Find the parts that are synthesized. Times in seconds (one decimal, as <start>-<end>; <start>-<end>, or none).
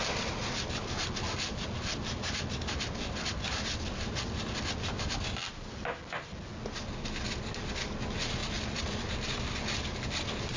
none